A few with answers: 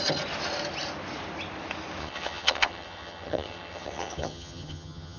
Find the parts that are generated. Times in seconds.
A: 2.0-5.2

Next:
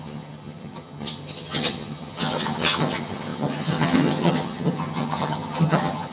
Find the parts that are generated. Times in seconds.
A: 0.0-6.1

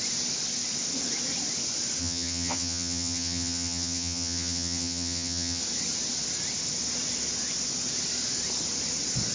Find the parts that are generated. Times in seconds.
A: 2.0-5.6

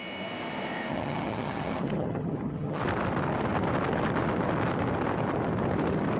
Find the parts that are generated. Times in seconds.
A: 0.9-2.8